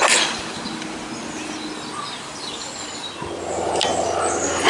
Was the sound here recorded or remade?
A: recorded